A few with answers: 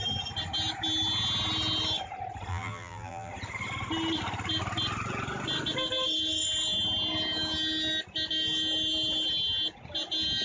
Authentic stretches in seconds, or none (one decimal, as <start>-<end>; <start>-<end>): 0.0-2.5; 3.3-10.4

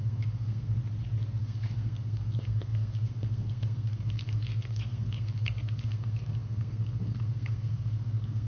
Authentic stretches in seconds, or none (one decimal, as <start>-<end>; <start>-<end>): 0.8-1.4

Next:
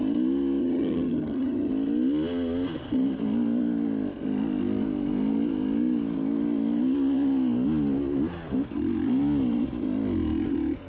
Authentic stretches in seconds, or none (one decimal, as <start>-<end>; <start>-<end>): 0.0-0.6; 1.7-10.9